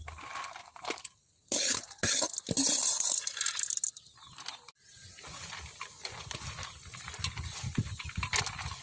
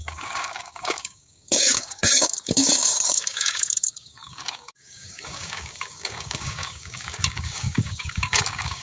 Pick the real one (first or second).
first